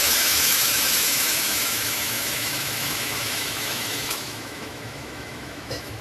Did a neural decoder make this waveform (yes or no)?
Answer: yes